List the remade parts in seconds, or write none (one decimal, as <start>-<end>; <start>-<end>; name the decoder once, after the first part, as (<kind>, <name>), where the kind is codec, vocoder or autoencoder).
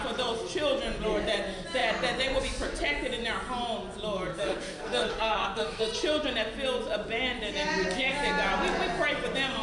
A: 4.3-5.8 (codec, SNAC)